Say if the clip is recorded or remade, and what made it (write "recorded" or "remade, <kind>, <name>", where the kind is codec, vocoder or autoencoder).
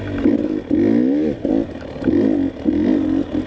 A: recorded